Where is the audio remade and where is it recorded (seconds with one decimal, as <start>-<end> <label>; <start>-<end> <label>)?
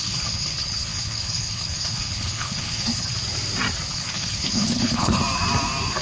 0.0-3.1 remade; 3.1-3.9 recorded; 3.9-5.2 remade; 5.2-6.0 recorded